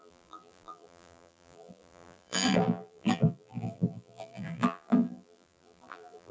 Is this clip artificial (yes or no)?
yes